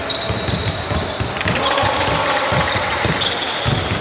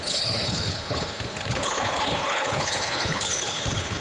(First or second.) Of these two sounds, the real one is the first